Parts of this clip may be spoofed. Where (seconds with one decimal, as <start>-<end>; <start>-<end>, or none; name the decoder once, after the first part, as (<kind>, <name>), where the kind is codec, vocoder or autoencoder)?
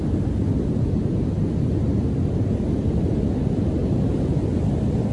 none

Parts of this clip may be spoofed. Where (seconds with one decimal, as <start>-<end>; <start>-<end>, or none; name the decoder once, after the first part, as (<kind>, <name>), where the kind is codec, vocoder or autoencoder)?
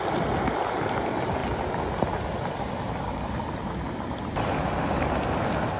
none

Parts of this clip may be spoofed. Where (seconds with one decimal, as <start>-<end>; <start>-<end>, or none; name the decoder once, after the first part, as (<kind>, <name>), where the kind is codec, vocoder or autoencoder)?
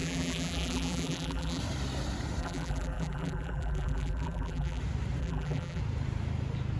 0.0-1.6 (vocoder, BigVGAN v2); 2.4-4.8; 5.2-5.8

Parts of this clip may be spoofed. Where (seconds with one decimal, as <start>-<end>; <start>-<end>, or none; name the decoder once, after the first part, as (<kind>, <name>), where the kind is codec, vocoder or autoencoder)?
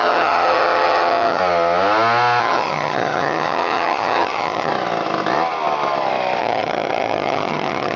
0.0-1.4 (vocoder, HiFi-GAN); 2.4-4.7; 6.4-8.0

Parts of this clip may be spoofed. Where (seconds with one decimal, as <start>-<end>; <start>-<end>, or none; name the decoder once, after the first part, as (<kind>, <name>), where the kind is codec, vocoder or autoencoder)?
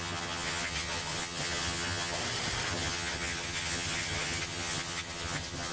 0.0-2.2 (vocoder, HiFi-GAN); 2.7-5.7